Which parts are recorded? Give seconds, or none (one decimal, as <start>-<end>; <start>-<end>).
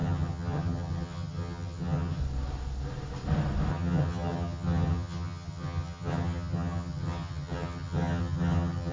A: 2.2-3.7